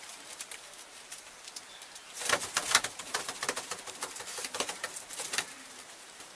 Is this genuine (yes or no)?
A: no